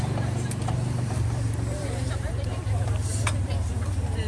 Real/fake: fake